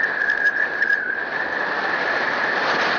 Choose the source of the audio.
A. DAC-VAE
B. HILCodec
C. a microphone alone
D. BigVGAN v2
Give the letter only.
C